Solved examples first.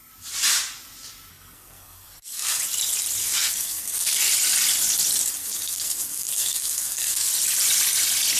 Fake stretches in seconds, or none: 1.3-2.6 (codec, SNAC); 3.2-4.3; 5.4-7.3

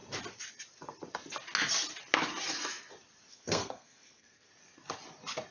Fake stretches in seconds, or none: 3.3-4.5 (codec, SNAC)

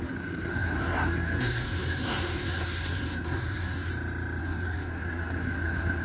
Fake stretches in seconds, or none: 0.0-3.9 (codec, SNAC); 4.4-6.0

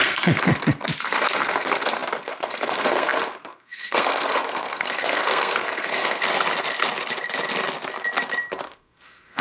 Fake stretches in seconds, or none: 0.0-0.5 (codec, SNAC); 1.0-6.2; 8.6-9.4

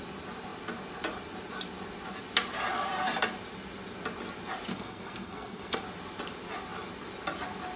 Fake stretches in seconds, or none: 4.7-5.8 (codec, SNAC)